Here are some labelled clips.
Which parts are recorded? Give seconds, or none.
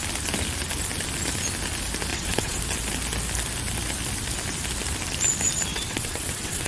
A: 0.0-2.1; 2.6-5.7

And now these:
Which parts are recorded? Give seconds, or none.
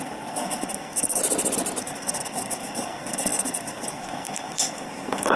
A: 1.2-1.8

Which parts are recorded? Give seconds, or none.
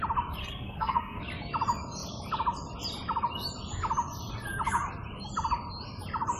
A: 0.0-0.4; 1.2-6.4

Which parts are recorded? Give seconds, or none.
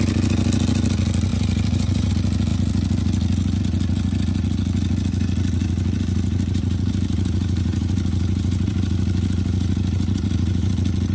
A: 0.0-1.3; 2.1-5.6; 10.7-11.1